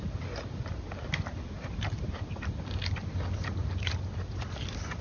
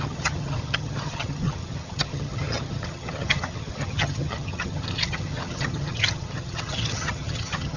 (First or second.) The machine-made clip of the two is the second